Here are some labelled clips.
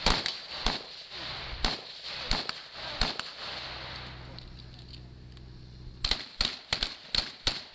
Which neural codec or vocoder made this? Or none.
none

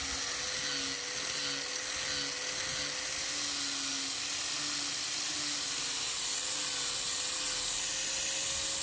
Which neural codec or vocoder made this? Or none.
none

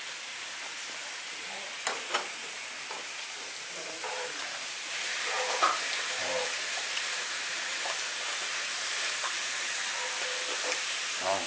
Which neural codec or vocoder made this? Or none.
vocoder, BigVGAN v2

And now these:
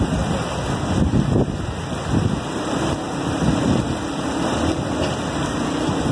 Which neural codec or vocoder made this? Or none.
none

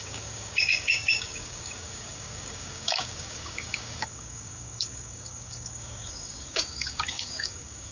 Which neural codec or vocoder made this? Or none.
codec, DAC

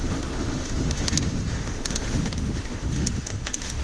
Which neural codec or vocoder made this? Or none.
autoencoder, DAC-VAE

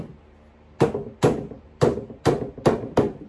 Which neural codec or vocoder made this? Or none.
none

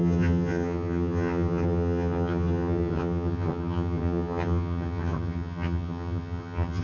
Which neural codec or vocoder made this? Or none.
vocoder, HiFi-GAN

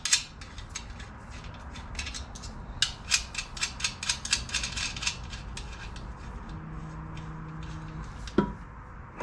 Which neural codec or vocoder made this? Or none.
none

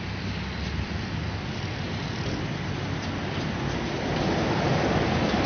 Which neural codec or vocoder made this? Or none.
vocoder, BigVGAN v2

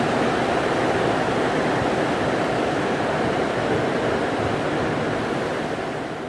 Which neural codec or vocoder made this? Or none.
none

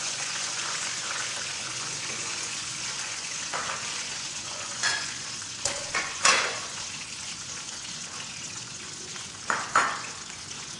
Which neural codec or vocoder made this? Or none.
vocoder, Vocos